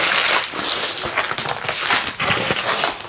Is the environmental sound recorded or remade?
recorded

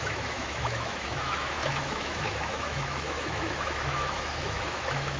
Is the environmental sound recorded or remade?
remade